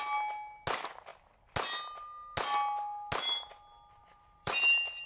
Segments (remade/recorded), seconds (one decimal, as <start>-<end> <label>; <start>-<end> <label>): 0.0-4.0 recorded; 4.0-4.5 remade; 4.5-5.1 recorded